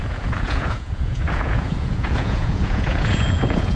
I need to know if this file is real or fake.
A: fake